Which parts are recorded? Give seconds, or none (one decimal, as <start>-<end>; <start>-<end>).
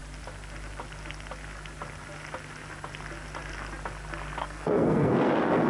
0.0-4.4